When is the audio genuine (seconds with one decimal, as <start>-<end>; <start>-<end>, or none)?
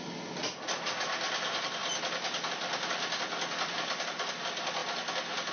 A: 0.0-5.5